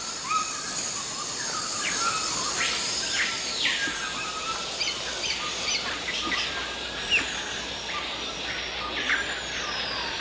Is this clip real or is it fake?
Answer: real